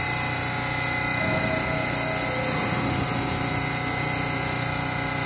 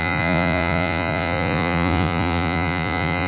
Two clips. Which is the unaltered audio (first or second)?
first